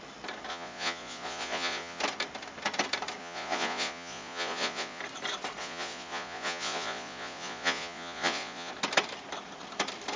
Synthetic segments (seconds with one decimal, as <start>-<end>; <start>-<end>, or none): 0.5-2.0; 3.2-5.0; 5.6-8.7